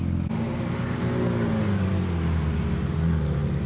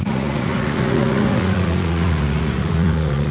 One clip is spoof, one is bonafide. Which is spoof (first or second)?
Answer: second